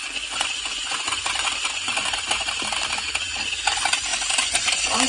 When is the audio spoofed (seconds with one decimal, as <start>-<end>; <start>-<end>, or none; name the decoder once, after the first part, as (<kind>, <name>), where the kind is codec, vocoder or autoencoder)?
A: 0.0-2.5 (vocoder, Vocos); 4.1-5.1